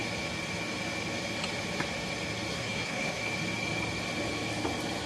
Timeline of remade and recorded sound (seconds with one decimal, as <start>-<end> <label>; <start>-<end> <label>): 0.0-2.5 recorded; 2.5-3.2 remade; 3.2-5.1 recorded